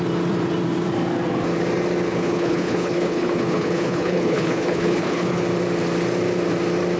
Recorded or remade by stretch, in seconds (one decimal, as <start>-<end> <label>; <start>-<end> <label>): 0.0-2.1 recorded; 2.1-5.4 remade; 5.4-7.0 recorded